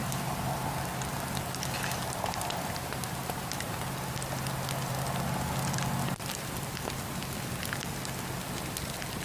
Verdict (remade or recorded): recorded